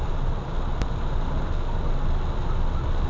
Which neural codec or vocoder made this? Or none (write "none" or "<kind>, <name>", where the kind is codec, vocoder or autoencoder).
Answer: none